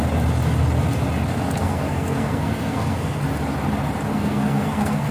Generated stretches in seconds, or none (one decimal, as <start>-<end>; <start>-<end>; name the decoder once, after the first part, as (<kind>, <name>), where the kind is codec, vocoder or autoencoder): 1.6-3.2 (codec, SNAC); 4.1-5.1